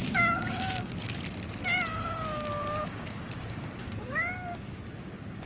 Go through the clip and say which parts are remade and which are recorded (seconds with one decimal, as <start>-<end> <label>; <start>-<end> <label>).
0.0-1.0 remade; 1.0-1.9 recorded; 1.9-5.5 remade